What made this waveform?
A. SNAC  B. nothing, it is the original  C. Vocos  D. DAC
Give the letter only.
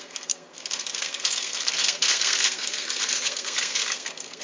A